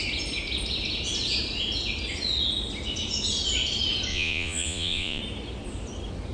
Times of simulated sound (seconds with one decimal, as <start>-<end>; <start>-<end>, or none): 4.1-5.2